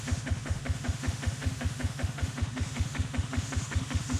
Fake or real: fake